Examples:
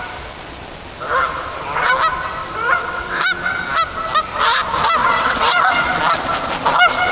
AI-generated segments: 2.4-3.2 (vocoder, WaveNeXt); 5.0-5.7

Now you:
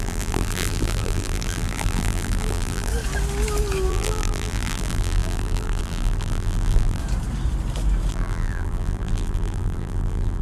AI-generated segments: 0.0-2.9 (vocoder, BigVGAN v2); 3.9-7.0; 8.1-10.4

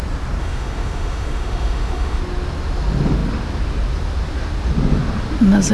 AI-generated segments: 0.4-2.2 (autoencoder, DAC-VAE)